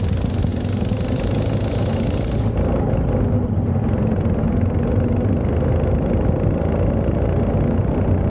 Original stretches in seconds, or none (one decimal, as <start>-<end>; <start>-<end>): 0.0-8.3